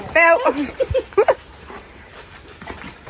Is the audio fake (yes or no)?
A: yes